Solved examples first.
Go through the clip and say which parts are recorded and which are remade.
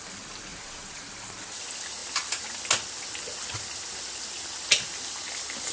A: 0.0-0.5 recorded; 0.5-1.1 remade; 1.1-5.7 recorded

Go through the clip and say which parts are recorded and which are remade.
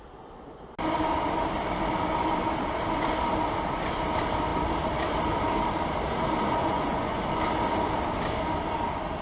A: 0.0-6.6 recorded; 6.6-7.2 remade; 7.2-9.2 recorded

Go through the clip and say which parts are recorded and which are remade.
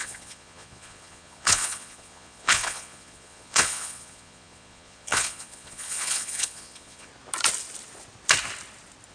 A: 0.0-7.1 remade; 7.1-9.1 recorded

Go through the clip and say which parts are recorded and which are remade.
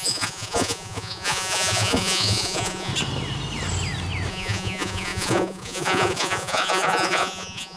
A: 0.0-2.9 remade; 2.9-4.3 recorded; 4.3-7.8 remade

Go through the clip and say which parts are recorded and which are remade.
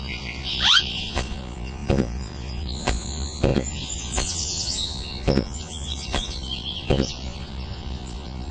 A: 0.0-8.5 remade